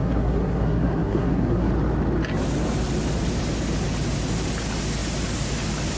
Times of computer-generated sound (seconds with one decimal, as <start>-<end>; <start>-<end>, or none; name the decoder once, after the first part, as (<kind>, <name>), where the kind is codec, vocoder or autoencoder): 0.0-1.7 (codec, SNAC)